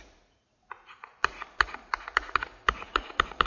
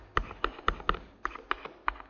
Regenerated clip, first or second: first